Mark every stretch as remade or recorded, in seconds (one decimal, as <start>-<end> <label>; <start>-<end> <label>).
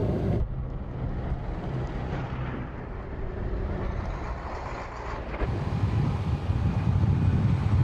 0.0-4.7 remade; 4.7-7.8 recorded